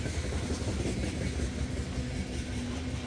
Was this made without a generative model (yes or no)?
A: yes